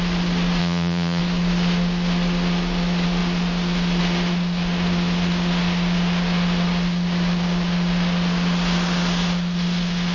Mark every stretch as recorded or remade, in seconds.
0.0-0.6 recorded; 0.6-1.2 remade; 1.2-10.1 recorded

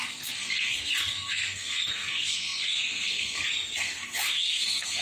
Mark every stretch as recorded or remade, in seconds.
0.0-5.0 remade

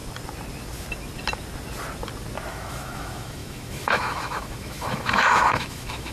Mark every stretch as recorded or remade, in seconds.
0.0-2.5 recorded; 2.5-6.1 remade